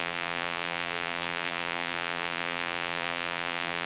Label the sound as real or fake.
fake